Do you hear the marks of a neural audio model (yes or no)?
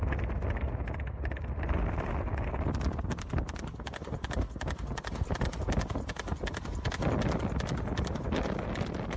no